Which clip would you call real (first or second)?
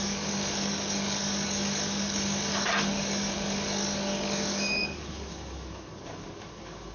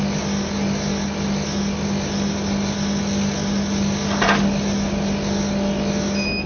second